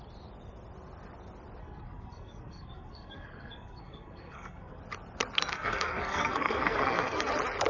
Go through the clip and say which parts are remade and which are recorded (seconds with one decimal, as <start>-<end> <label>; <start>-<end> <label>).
0.0-1.6 recorded; 1.6-4.8 remade; 4.8-5.5 recorded; 5.5-7.3 remade; 7.3-7.7 recorded